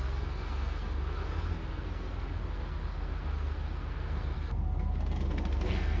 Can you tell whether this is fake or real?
fake